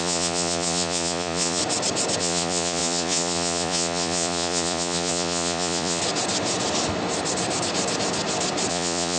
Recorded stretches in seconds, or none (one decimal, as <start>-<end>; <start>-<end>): 1.6-2.2; 6.0-8.7